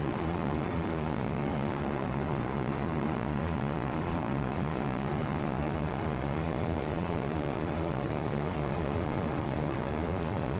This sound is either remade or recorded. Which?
remade